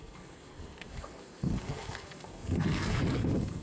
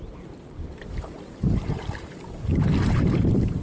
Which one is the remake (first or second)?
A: first